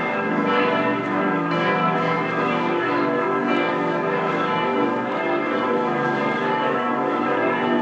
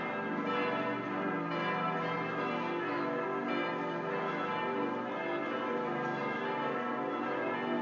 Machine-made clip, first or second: first